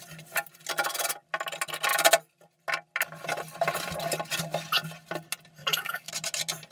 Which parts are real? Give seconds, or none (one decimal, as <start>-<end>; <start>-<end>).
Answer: 0.0-5.6; 6.1-6.7